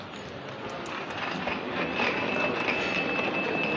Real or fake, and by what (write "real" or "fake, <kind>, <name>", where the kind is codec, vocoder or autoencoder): real